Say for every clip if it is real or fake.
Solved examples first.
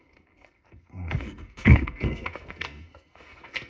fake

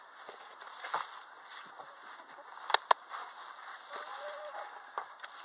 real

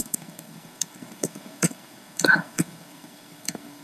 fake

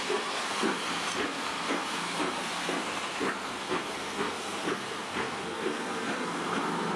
fake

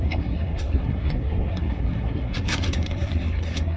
fake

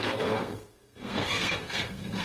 fake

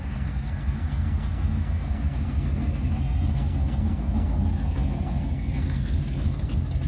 fake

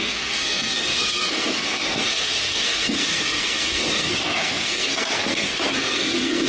fake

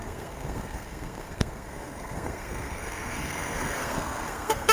fake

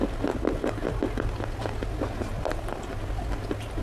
real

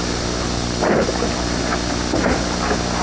real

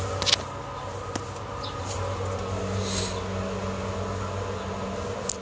real